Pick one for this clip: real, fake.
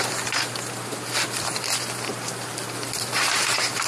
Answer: real